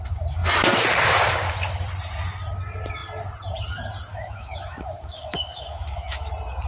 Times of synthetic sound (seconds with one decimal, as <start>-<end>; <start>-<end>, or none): 4.1-6.3